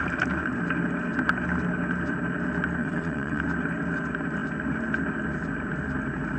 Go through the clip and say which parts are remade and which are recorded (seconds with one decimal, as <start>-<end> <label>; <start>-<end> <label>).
0.0-2.8 recorded; 2.8-3.4 remade; 3.4-6.4 recorded

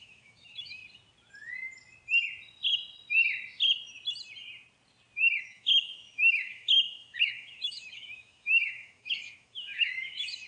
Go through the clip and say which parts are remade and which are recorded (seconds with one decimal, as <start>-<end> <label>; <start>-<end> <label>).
0.0-0.8 remade; 0.8-5.4 recorded; 5.4-10.5 remade

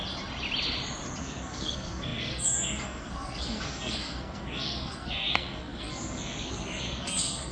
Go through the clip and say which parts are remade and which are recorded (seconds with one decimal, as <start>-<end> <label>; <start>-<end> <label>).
0.0-1.2 recorded; 1.2-7.5 remade

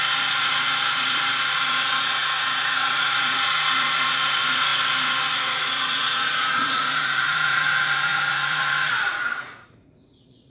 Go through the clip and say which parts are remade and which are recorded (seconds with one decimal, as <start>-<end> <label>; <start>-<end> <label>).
0.0-10.5 remade

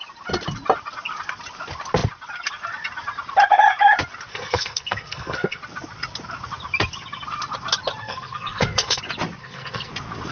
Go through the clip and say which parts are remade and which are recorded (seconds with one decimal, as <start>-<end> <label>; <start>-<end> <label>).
0.0-4.3 recorded; 4.3-5.6 remade; 5.6-8.0 recorded; 8.0-9.0 remade; 9.0-9.4 recorded; 9.4-9.9 remade; 9.9-10.3 recorded